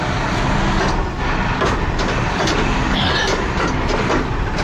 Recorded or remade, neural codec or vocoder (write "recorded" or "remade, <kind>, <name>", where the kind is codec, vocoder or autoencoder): recorded